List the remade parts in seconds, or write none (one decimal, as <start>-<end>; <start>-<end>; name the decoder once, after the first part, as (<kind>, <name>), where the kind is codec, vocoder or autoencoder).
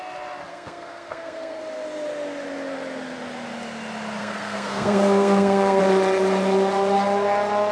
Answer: 0.5-1.6 (codec, SNAC); 4.2-5.8